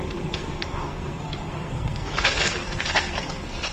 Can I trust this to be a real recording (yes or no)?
no